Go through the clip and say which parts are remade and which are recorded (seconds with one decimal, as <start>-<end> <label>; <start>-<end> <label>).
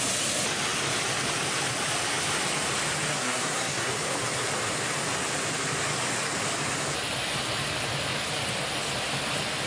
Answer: 0.0-3.1 recorded; 3.1-3.9 remade; 3.9-9.7 recorded